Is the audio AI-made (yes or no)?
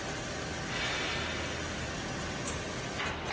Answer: no